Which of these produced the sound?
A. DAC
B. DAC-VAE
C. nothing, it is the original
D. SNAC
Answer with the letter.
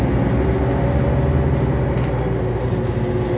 C